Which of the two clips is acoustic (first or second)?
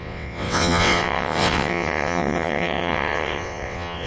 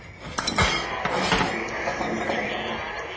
second